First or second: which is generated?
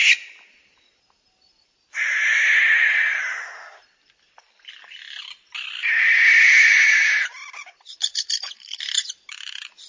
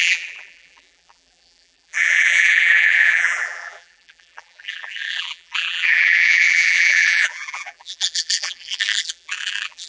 second